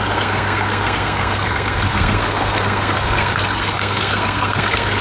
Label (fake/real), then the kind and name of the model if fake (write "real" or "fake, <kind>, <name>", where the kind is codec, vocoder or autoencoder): fake, codec, SNAC